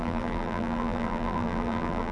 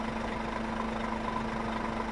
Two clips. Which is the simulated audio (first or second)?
first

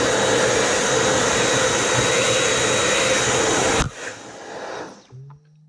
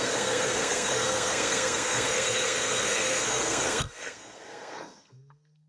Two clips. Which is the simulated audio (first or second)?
second